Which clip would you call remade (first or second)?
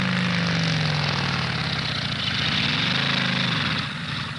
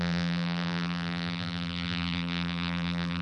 second